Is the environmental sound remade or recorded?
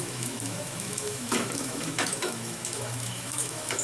remade